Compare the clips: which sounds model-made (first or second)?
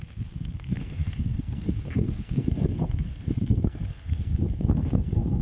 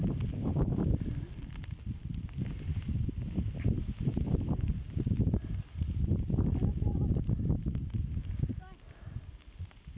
first